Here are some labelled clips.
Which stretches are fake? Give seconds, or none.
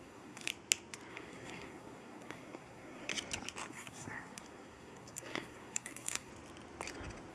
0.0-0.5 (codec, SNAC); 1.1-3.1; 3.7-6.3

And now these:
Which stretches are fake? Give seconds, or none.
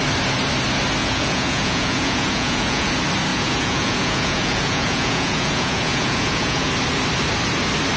1.0-2.9 (vocoder, Vocos); 3.3-6.7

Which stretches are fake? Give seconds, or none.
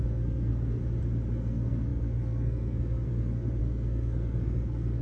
0.0-0.8 (codec, SNAC); 1.3-5.0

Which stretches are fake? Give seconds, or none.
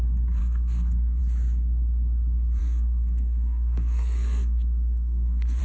0.4-1.2 (codec, SNAC); 2.6-5.6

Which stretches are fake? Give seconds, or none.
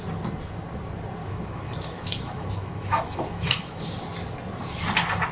1.2-3.8 (autoencoder, DAC-VAE)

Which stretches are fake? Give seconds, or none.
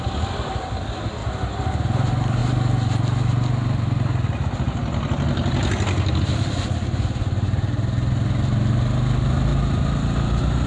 none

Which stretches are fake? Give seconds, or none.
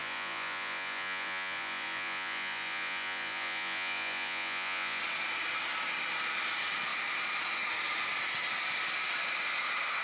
0.0-5.0 (vocoder, Vocos)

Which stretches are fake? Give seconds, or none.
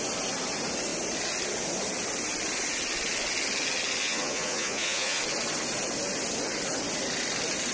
4.0-5.2 (vocoder, Vocos)